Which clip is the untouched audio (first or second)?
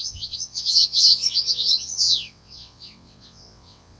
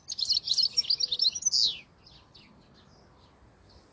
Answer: second